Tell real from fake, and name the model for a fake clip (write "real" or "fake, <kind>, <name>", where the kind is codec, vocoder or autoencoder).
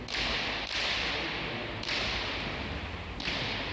real